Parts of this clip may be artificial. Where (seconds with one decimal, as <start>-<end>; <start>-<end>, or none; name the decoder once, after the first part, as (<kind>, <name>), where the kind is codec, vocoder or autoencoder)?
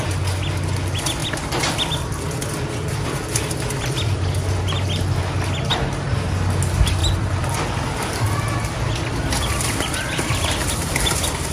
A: 1.2-1.9 (vocoder, BigVGAN v2); 7.0-11.5